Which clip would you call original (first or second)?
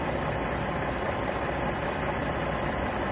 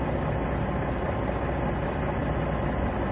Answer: second